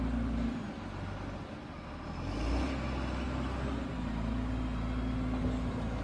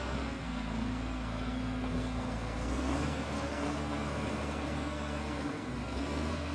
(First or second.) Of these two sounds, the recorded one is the first